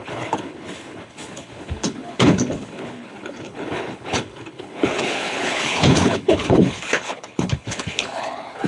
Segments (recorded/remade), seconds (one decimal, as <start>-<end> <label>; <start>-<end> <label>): 0.0-8.7 remade